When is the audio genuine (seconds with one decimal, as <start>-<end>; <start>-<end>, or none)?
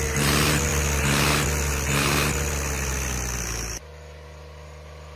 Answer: 0.0-5.2